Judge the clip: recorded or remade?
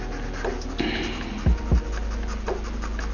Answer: recorded